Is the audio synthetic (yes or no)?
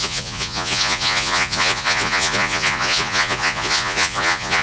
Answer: yes